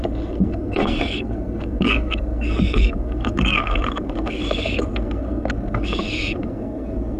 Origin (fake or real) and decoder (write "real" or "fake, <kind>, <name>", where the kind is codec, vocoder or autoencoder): fake, codec, SNAC